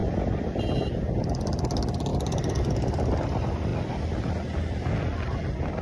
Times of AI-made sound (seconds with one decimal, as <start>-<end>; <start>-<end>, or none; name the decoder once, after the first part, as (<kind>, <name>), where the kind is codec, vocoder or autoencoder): none